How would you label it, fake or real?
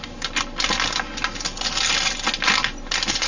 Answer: real